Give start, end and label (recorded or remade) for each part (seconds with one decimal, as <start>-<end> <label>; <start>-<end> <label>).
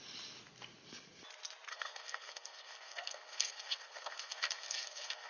0.0-1.7 recorded; 1.7-5.3 remade